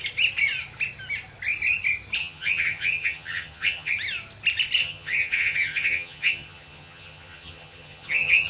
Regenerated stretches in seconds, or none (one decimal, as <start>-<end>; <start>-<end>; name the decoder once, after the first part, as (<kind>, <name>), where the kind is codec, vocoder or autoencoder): 2.2-3.9 (vocoder, HiFi-GAN); 4.8-8.5